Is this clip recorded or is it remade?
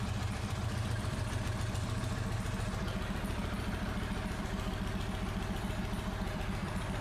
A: remade